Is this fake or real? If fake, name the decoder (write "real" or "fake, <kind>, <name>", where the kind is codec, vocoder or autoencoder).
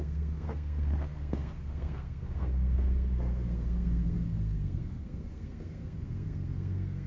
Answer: fake, codec, SNAC